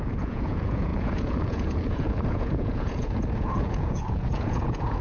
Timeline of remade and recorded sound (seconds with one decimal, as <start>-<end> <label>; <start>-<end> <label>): 0.0-5.0 remade